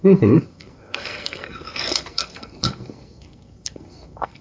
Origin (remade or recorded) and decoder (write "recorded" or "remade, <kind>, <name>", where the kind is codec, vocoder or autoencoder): remade, codec, SNAC